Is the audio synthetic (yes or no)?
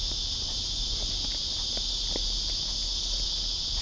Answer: no